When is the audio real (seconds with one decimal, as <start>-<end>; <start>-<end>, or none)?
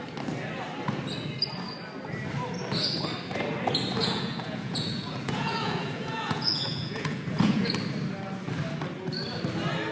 0.0-4.0; 7.7-9.9